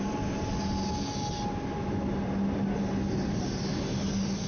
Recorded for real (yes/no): yes